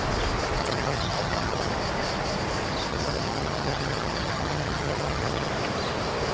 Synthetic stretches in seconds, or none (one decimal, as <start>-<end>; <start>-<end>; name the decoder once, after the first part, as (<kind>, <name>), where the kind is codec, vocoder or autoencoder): 0.6-1.7 (vocoder, HiFi-GAN); 2.9-5.5